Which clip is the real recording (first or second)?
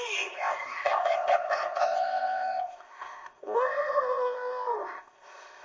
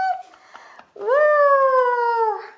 second